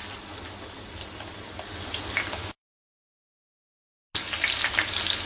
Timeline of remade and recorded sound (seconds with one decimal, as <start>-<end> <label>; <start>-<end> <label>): 0.0-2.4 recorded; 2.4-3.3 remade; 3.3-5.3 recorded